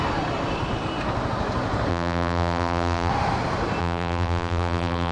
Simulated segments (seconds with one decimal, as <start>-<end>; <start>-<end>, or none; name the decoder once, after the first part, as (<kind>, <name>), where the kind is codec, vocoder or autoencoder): 1.9-3.1 (vocoder, BigVGAN v2); 3.8-5.1